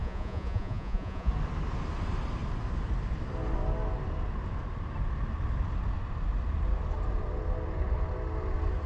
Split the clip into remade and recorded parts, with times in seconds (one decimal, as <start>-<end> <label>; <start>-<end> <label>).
0.0-1.3 remade; 1.3-8.9 recorded